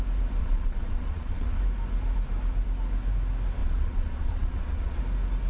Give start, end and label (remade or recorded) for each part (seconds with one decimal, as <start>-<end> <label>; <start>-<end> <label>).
0.0-0.4 recorded; 0.4-1.6 remade; 1.6-3.6 recorded; 3.6-5.0 remade; 5.0-5.5 recorded